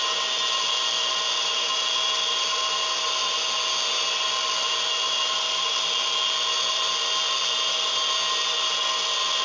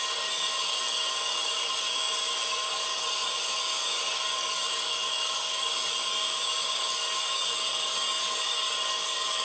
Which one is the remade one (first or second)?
second